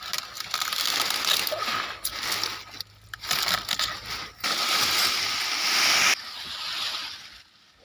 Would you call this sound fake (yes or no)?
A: no